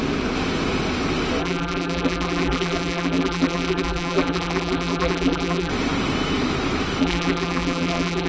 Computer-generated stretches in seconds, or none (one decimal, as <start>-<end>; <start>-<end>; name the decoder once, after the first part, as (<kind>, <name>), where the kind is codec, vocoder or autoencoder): 1.4-5.7 (vocoder, BigVGAN v2); 7.0-8.3